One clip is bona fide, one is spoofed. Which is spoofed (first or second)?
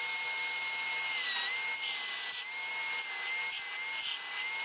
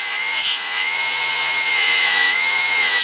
second